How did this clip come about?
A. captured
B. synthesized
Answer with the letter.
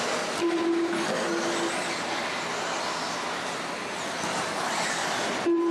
A